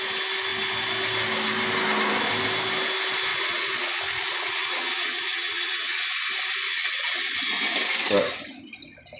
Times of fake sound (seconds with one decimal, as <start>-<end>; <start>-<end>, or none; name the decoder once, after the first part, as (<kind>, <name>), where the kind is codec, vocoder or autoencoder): 3.3-6.1 (vocoder, Vocos); 6.7-7.4

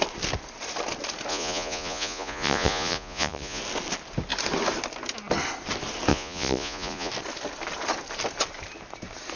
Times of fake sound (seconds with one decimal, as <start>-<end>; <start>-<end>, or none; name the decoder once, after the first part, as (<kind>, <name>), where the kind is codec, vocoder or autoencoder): 1.3-3.6 (vocoder, Vocos); 6.1-7.1

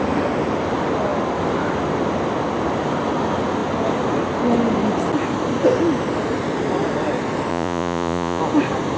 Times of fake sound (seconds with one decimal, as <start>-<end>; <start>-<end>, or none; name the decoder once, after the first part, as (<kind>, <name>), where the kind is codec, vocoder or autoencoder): 7.5-8.4 (vocoder, Vocos)

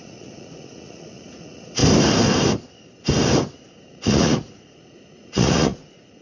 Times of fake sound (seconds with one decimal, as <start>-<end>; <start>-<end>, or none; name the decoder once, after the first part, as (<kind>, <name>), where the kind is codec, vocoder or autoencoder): 0.0-1.8 (vocoder, Vocos); 3.9-6.2

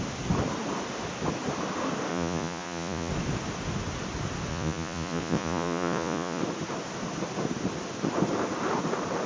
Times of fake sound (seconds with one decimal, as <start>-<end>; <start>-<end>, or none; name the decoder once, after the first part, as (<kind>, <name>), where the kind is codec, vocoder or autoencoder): 2.1-3.1 (vocoder, Vocos); 4.5-6.4

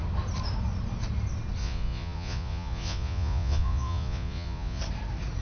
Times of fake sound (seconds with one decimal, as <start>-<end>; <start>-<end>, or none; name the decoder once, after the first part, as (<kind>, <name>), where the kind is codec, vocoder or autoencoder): 1.6-4.8 (vocoder, Vocos)